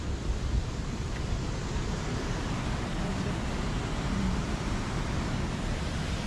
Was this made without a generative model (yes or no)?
yes